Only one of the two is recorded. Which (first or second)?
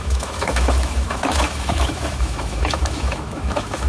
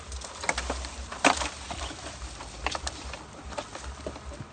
second